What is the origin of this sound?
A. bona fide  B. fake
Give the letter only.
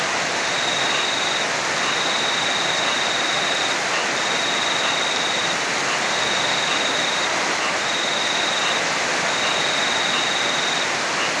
A